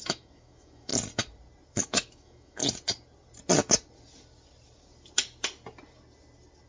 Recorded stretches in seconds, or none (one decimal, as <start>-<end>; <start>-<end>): 0.9-1.7; 2.6-6.7